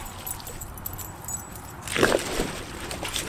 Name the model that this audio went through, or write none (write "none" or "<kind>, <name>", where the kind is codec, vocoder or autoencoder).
vocoder, BigVGAN v2